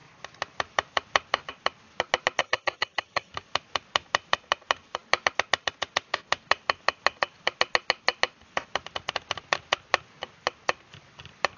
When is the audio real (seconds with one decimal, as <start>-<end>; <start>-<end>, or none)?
0.0-2.4; 3.3-11.6